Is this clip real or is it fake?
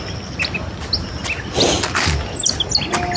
real